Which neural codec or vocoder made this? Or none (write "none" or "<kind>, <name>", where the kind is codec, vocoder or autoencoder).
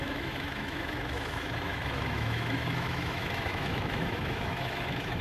autoencoder, DAC-VAE